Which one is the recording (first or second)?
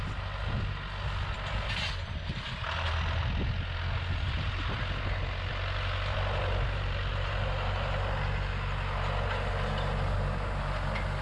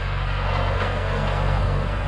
first